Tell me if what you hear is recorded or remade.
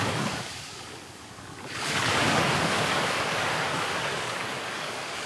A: remade